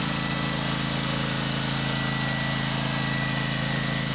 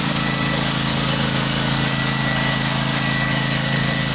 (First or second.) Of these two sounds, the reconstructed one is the second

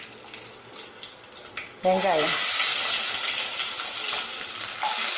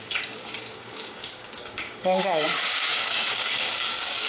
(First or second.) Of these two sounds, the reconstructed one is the second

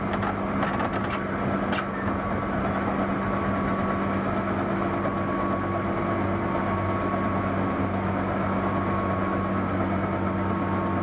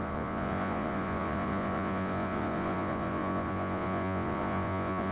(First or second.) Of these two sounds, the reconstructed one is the second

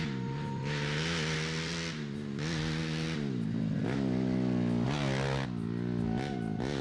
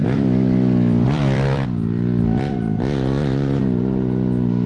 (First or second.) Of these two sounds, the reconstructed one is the second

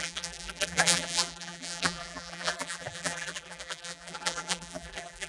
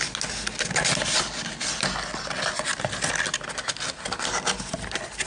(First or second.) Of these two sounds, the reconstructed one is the first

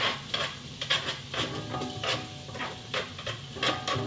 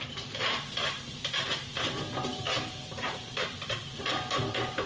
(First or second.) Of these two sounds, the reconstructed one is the second